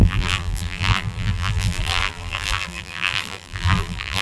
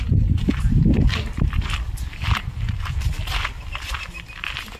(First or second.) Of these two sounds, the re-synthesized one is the first